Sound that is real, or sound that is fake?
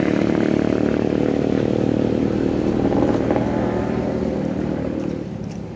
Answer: fake